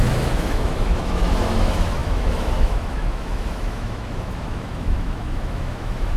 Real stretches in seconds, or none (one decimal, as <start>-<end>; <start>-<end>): none